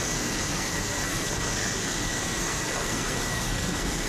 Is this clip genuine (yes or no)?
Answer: no